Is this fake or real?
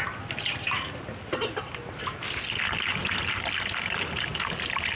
real